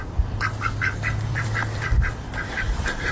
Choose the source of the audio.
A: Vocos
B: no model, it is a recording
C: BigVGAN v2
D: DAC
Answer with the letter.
C